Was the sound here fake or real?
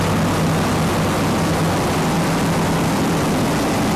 real